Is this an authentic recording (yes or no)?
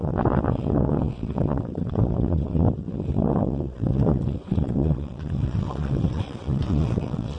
no